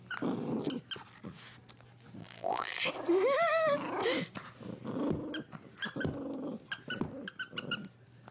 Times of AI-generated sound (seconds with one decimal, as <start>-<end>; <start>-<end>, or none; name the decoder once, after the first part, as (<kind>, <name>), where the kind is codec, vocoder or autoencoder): 2.2-2.8 (vocoder, BigVGAN v2)